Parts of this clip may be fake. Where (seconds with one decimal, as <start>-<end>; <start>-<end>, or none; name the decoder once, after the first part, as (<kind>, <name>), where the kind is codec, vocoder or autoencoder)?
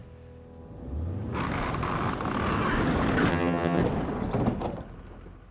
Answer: 3.3-3.8 (vocoder, HiFi-GAN)